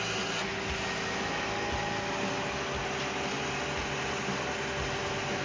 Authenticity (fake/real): real